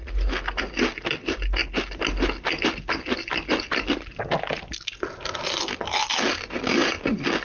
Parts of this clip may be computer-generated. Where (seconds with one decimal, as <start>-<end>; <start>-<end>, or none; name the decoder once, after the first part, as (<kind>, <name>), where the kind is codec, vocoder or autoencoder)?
none